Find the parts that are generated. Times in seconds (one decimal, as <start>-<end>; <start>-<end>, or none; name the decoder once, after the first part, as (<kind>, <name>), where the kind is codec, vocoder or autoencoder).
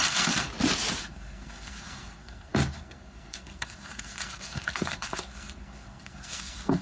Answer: 0.0-0.5 (codec, SNAC); 1.0-6.8